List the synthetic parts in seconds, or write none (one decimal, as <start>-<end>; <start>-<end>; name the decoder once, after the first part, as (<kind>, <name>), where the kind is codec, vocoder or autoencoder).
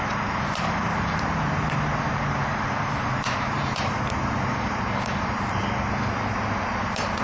0.0-5.6 (vocoder, BigVGAN v2); 6.7-7.2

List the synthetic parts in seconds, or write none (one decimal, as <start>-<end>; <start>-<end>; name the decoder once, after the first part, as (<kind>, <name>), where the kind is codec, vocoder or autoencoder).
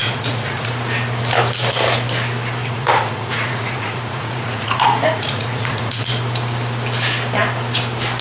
0.0-0.7 (vocoder, Vocos); 2.6-6.0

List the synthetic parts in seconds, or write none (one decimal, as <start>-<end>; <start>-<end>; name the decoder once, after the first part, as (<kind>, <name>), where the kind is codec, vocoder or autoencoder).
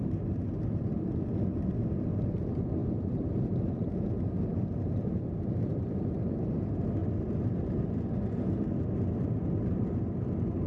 2.8-4.3 (vocoder, BigVGAN v2)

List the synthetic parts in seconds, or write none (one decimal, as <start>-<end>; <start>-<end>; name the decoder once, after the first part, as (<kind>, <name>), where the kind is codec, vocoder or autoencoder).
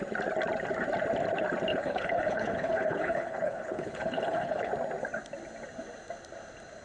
1.7-4.7 (codec, HILCodec)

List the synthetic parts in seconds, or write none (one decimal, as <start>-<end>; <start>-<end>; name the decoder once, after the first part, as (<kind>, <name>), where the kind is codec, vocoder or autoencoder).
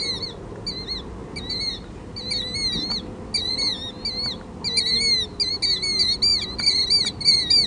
none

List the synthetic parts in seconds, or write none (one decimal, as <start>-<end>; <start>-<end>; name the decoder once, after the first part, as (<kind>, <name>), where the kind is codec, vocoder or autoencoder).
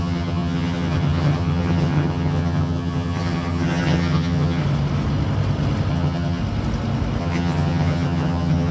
0.0-4.6 (vocoder, HiFi-GAN); 5.9-6.4; 7.2-8.7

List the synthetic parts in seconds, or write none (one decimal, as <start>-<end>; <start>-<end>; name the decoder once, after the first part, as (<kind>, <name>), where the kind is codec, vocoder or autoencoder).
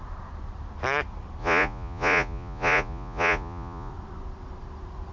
1.4-3.9 (vocoder, Vocos)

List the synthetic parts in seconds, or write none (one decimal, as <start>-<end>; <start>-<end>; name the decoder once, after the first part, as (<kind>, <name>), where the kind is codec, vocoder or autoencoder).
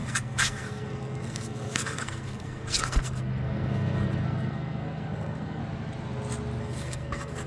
0.0-5.6 (codec, SNAC); 6.6-7.5